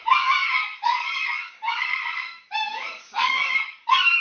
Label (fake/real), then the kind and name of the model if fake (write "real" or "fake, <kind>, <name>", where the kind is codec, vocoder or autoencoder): fake, codec, DAC